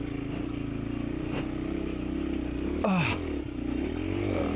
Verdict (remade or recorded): recorded